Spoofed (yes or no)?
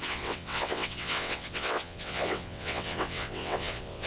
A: yes